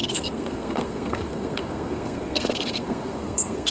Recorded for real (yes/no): no